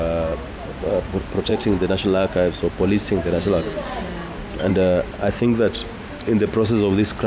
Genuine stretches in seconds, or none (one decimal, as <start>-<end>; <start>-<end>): 0.0-7.3

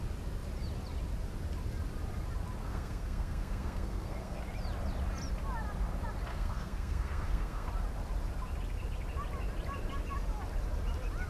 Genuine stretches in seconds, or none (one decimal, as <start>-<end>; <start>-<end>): 0.0-2.6; 4.4-6.3; 7.7-11.3

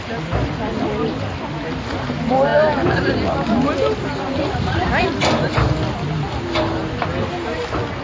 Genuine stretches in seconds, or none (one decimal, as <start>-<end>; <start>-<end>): 0.0-8.0

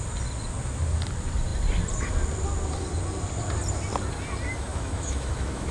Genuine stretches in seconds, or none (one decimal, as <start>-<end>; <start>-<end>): 0.0-4.7